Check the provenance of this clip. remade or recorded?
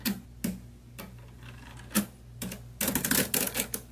recorded